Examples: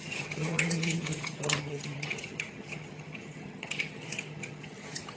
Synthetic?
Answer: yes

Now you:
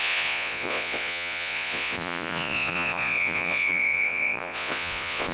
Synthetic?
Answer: yes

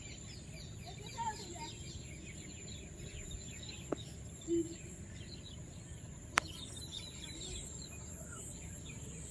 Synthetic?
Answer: no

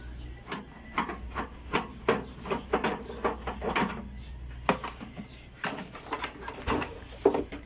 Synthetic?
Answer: no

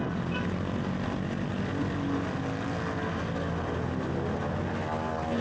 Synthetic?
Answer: no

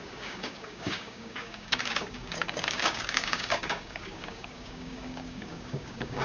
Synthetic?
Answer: yes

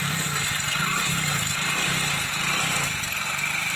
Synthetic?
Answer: no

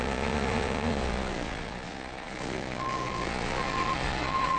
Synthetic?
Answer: yes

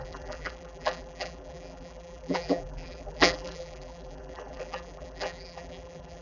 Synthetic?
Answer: yes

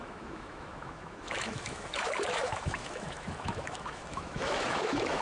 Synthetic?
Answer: yes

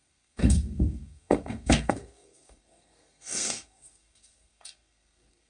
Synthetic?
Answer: yes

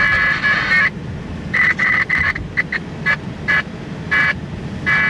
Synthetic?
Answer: no